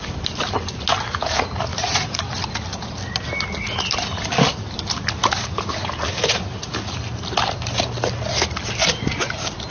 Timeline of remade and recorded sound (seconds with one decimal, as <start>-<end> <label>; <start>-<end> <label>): 0.0-1.7 recorded; 1.7-2.2 remade; 2.2-9.7 recorded